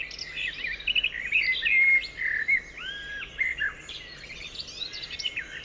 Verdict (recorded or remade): recorded